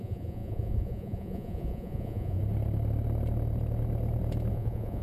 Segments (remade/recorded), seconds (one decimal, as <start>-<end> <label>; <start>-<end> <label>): 0.0-2.4 remade; 2.4-4.5 recorded; 4.5-5.0 remade